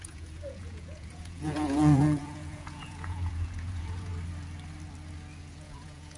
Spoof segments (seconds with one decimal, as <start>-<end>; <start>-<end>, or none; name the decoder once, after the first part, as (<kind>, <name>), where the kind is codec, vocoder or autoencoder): 0.0-4.1 (vocoder, Vocos); 5.4-6.2